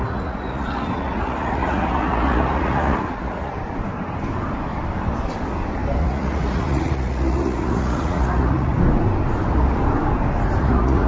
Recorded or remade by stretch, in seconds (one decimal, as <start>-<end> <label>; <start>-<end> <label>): 0.0-3.5 remade; 3.5-6.0 recorded; 6.0-8.7 remade; 8.7-10.6 recorded; 10.6-11.1 remade

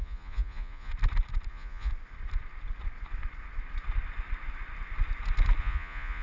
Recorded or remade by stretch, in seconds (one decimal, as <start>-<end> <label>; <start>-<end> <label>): 0.0-0.9 remade; 0.9-1.5 recorded; 1.5-1.9 remade; 1.9-5.6 recorded; 5.6-6.2 remade

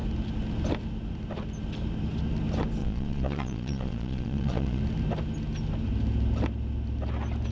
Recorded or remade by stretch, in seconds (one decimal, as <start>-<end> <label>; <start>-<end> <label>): 0.0-2.8 recorded; 2.8-4.8 remade; 4.8-7.5 recorded

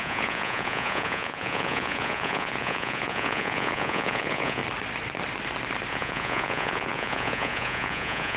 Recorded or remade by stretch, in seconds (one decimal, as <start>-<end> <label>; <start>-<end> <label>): 0.0-4.6 remade; 4.6-5.9 recorded; 5.9-8.4 remade

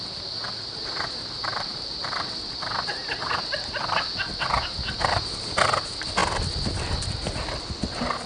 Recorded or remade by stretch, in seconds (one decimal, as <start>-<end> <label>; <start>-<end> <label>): 0.0-8.3 recorded

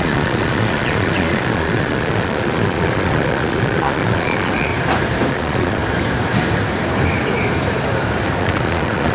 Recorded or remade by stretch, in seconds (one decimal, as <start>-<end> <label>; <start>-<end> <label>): 0.0-4.7 remade; 4.7-5.3 recorded; 5.3-5.8 remade; 5.8-8.4 recorded; 8.4-9.1 remade

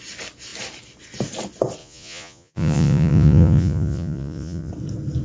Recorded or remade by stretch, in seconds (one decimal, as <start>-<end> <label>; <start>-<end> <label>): 0.0-1.8 recorded; 1.8-4.7 remade; 4.7-5.2 recorded

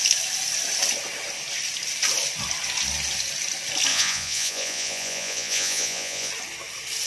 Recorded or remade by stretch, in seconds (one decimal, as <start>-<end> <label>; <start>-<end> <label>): 0.0-3.9 recorded; 3.9-6.3 remade; 6.3-7.1 recorded